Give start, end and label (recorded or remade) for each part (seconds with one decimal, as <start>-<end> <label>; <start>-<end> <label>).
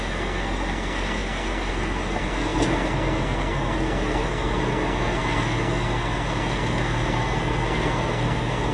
0.0-8.7 remade